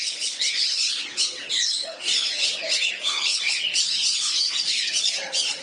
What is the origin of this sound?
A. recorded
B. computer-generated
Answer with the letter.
B